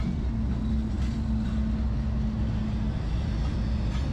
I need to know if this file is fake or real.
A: real